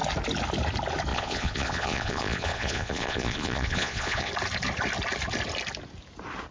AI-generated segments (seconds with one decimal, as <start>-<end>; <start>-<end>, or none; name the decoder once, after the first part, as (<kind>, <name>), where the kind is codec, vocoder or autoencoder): 1.1-4.3 (vocoder, Vocos)